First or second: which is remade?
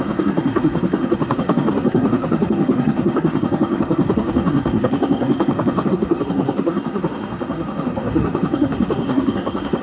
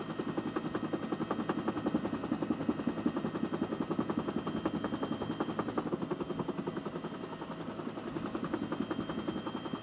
first